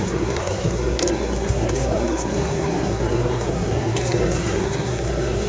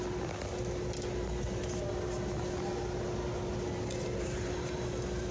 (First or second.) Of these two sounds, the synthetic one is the first